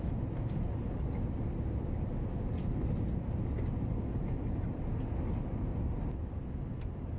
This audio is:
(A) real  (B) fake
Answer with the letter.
A